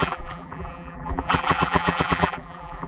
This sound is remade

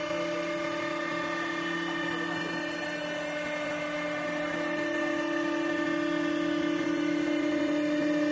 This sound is recorded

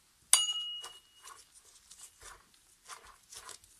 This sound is recorded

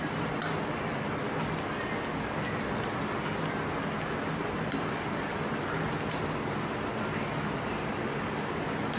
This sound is recorded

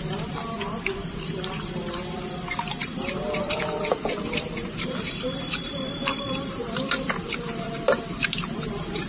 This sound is remade